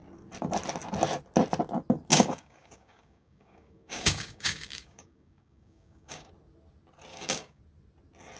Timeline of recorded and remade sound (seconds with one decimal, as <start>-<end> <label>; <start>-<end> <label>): 0.0-2.1 recorded; 2.1-6.3 remade; 6.3-7.1 recorded; 7.1-7.6 remade; 7.6-8.4 recorded